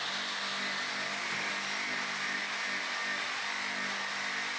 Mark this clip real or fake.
real